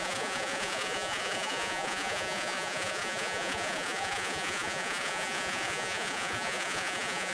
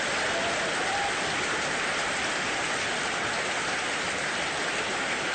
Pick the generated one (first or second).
first